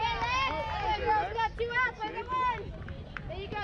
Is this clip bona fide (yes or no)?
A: yes